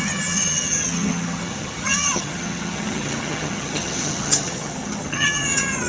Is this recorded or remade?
remade